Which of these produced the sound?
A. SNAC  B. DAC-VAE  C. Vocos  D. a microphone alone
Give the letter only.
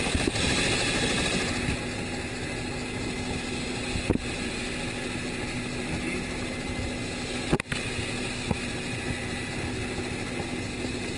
D